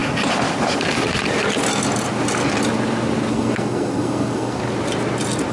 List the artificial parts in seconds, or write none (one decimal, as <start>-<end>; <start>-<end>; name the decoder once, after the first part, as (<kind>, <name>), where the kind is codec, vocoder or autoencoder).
3.3-4.6 (codec, SNAC)